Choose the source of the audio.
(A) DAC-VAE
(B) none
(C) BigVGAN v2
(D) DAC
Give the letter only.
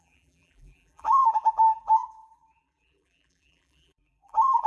C